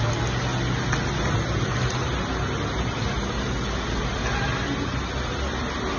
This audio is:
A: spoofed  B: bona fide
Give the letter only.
B